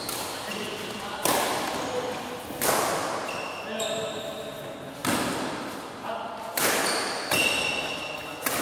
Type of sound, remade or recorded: recorded